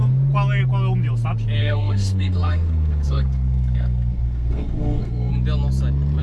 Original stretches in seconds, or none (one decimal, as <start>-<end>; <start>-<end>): 0.0-1.6; 5.3-6.2